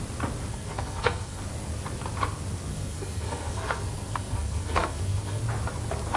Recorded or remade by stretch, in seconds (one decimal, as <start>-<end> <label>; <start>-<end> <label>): 0.0-0.5 recorded; 0.5-1.4 remade; 1.4-2.7 recorded; 2.7-5.4 remade; 5.4-6.2 recorded